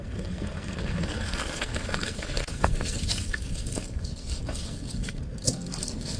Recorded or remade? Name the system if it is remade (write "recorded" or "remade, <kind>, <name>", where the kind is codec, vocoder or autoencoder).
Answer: remade, codec, SNAC